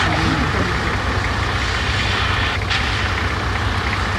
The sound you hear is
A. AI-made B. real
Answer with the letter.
B